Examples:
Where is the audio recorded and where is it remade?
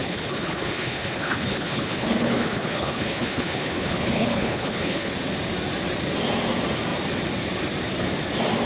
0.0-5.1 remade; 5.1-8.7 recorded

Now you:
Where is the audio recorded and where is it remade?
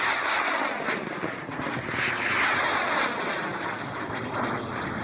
0.0-5.0 recorded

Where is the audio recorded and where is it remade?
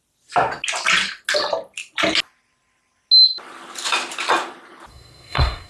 0.0-4.9 recorded; 4.9-5.7 remade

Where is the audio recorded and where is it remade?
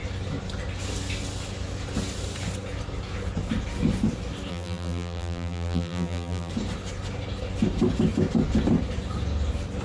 0.0-4.5 recorded; 4.5-6.5 remade; 6.5-9.8 recorded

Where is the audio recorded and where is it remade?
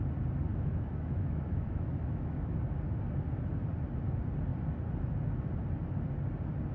0.0-0.5 recorded; 0.5-2.6 remade; 2.6-6.7 recorded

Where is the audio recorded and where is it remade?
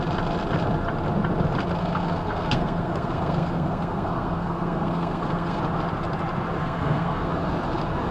0.0-1.8 recorded; 1.8-5.6 remade; 5.6-6.6 recorded; 6.6-7.3 remade; 7.3-8.1 recorded